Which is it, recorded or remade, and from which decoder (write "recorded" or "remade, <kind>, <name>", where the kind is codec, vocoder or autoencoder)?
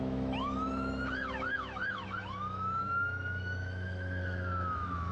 remade, autoencoder, DAC-VAE